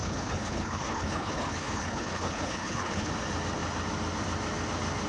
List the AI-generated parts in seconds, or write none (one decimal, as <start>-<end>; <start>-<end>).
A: 0.0-3.1